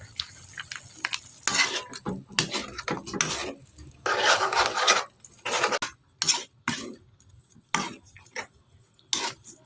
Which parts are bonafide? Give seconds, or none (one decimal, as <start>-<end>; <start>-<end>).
0.0-3.6; 4.9-9.7